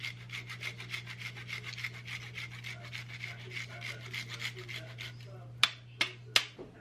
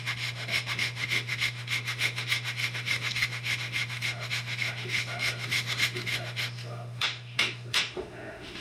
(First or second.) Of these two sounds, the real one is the first